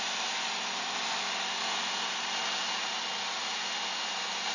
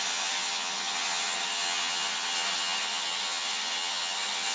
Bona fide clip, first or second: first